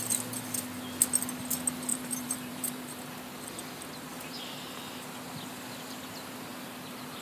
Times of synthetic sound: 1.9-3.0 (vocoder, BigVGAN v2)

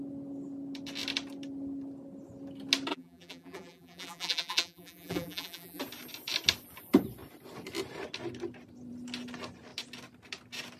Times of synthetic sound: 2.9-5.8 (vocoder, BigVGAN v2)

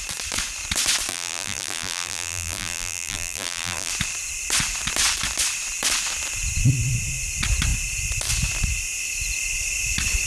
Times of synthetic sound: 1.1-3.9 (vocoder, BigVGAN v2)

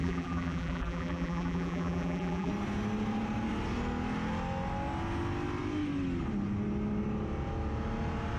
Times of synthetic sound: 0.0-2.5 (vocoder, BigVGAN v2)